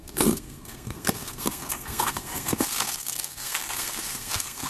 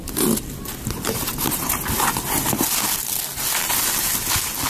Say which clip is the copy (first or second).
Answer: first